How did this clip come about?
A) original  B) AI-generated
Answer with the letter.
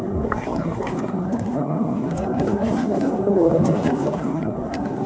B